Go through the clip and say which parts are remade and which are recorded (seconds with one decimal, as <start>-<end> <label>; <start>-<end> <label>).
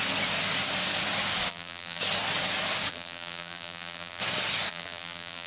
0.0-1.5 recorded; 1.5-2.0 remade; 2.0-2.9 recorded; 2.9-4.2 remade; 4.2-4.7 recorded; 4.7-5.5 remade